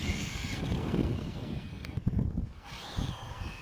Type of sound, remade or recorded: remade